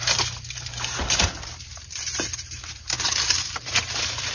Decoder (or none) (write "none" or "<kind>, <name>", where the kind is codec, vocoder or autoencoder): vocoder, BigVGAN v2